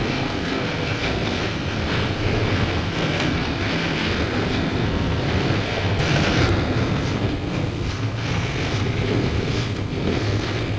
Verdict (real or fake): fake